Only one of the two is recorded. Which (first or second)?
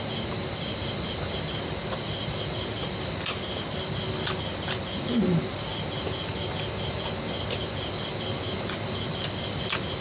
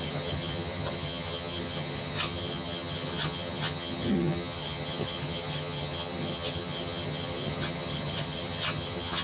first